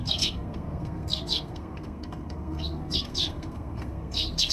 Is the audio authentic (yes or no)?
no